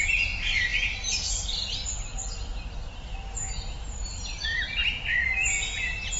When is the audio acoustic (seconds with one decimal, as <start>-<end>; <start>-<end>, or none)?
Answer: 0.0-3.1; 3.6-6.2